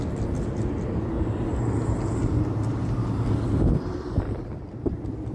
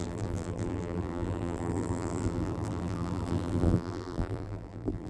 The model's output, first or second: second